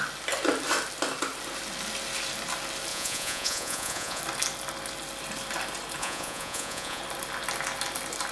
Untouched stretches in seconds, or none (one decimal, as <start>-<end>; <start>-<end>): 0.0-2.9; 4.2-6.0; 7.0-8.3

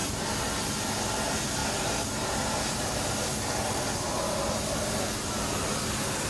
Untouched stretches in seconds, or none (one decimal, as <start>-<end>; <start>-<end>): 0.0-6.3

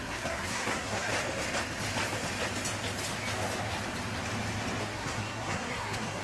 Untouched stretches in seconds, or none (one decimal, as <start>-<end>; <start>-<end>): 1.1-4.8